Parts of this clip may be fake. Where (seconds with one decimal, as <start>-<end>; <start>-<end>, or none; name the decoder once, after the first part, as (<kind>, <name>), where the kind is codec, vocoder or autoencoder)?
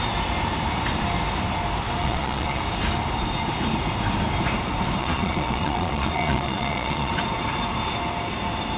2.0-2.6 (vocoder, Vocos); 5.0-7.1